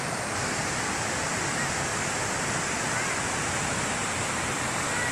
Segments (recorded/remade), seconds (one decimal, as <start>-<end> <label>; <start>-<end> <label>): 0.0-5.1 recorded